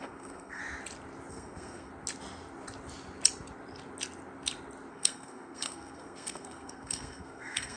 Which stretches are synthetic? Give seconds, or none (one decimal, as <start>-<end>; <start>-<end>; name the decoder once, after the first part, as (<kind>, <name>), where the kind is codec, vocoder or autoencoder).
0.0-0.6 (codec, SNAC); 1.3-1.9; 4.9-7.8